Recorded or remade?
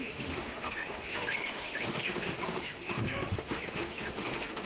remade